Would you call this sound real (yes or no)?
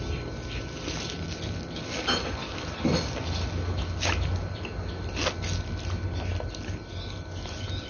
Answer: yes